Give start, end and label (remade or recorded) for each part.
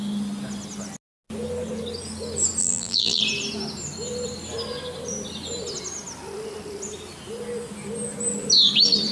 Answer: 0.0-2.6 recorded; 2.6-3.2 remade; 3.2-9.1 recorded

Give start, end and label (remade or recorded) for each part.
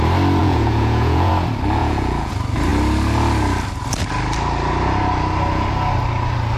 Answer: 0.0-0.4 recorded; 0.4-1.3 remade; 1.3-1.8 recorded; 1.8-2.3 remade; 2.3-6.6 recorded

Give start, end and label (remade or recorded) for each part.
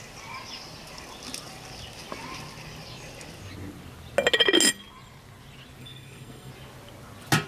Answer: 0.0-5.8 recorded; 5.8-6.5 remade; 6.5-7.5 recorded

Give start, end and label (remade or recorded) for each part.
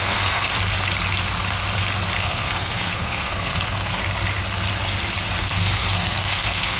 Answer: 0.0-0.5 remade; 0.5-2.2 recorded; 2.2-4.0 remade; 4.0-5.4 recorded; 5.4-6.8 remade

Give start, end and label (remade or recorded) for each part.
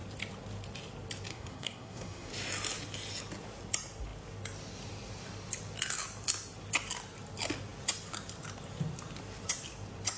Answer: 0.0-1.3 recorded; 1.3-2.3 remade; 2.3-10.2 recorded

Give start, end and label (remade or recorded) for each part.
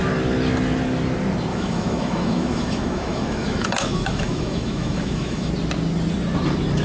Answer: 0.0-1.5 recorded; 1.5-5.5 remade; 5.5-6.8 recorded